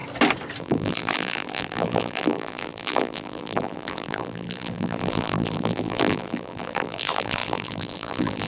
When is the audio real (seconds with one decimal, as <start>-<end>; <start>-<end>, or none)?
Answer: 0.0-0.6